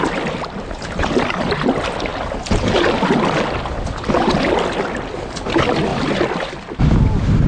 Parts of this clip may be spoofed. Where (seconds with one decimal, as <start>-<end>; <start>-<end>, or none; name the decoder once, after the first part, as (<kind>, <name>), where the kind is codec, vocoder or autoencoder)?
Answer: none